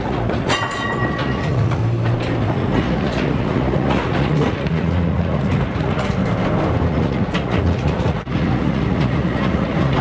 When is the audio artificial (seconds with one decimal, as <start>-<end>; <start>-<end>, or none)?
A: 0.0-1.8; 2.4-6.2; 6.9-10.0